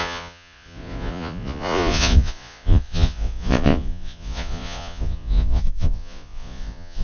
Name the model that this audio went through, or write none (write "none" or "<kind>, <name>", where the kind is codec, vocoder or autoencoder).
vocoder, Vocos